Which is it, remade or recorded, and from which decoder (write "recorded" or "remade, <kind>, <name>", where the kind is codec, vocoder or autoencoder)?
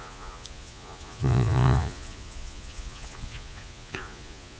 remade, vocoder, Vocos